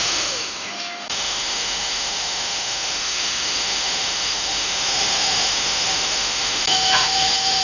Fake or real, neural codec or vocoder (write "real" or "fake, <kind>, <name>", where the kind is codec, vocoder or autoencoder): fake, autoencoder, DAC-VAE